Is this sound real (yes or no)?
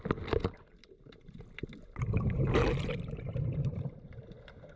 yes